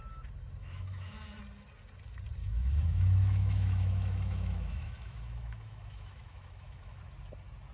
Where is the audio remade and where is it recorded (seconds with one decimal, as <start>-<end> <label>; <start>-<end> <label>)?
0.0-0.6 recorded; 0.6-1.4 remade; 1.4-2.4 recorded; 2.4-7.0 remade; 7.0-7.7 recorded

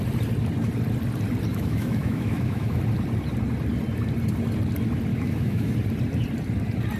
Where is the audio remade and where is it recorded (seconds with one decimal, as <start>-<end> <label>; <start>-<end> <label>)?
0.0-1.5 recorded; 1.5-2.8 remade; 2.8-5.1 recorded; 5.1-5.7 remade; 5.7-7.0 recorded

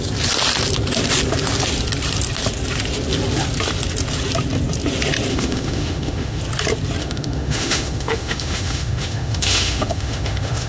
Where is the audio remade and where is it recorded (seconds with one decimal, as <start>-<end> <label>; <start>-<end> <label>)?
0.0-5.3 recorded; 5.3-6.4 remade; 6.4-7.0 recorded; 7.0-10.7 remade

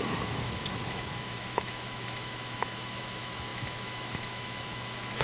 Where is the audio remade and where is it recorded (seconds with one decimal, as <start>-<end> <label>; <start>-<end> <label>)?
0.0-5.2 remade

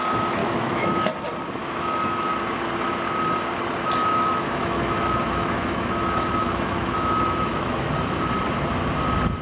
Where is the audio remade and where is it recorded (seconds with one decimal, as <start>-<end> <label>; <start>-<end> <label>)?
0.0-0.4 recorded; 0.4-1.1 remade; 1.1-1.6 recorded; 1.6-2.3 remade; 2.3-4.0 recorded; 4.0-7.9 remade; 7.9-9.4 recorded

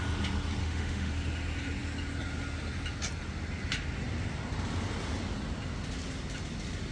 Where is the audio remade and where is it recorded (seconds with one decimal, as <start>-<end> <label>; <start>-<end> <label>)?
0.0-0.6 recorded; 0.6-1.1 remade; 1.1-6.9 recorded

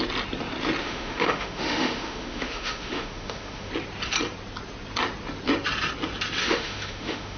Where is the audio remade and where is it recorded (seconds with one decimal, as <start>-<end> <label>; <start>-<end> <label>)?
0.0-0.8 recorded; 0.8-3.7 remade; 3.7-6.4 recorded; 6.4-7.4 remade

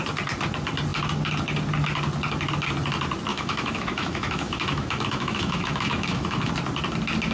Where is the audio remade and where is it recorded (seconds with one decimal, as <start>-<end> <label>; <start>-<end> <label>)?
0.0-3.3 recorded; 3.3-6.5 remade; 6.5-7.3 recorded